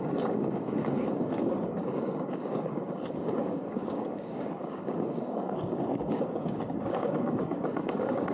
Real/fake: fake